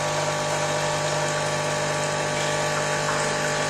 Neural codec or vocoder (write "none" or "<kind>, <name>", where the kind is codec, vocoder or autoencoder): none